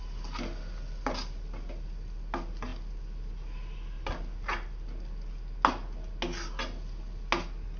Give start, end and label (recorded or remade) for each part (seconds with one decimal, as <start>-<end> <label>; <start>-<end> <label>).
0.0-7.8 recorded